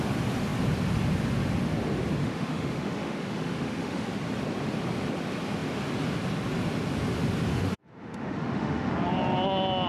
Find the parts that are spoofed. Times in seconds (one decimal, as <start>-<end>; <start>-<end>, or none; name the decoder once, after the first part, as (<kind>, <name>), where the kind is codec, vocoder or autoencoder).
2.2-4.1 (autoencoder, DAC-VAE); 7.5-8.9